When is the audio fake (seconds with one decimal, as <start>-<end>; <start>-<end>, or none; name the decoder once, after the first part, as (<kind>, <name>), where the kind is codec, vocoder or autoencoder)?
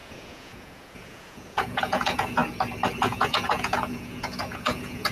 0.0-2.4 (vocoder, Vocos); 3.0-5.1